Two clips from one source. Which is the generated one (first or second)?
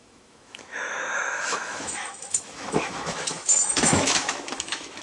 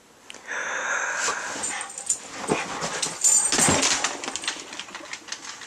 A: first